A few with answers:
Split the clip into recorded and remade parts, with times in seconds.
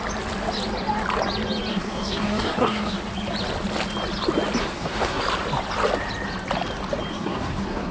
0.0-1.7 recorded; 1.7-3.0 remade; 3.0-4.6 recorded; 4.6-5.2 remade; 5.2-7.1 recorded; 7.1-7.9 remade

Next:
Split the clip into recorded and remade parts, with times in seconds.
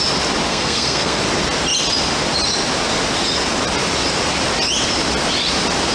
0.0-0.5 recorded; 0.5-1.2 remade; 1.2-5.9 recorded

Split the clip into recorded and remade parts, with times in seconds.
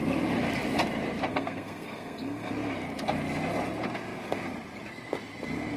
0.0-1.3 recorded; 1.3-2.5 remade; 2.5-5.8 recorded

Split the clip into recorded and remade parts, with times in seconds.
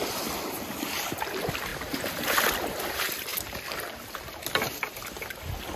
0.0-5.8 recorded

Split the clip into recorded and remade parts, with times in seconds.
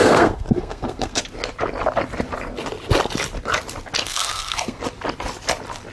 0.0-1.2 remade; 1.2-4.0 recorded; 4.0-4.8 remade; 4.8-5.9 recorded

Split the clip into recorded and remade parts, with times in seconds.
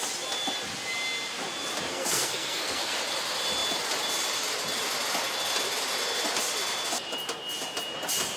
0.0-1.9 recorded; 1.9-3.0 remade; 3.0-8.4 recorded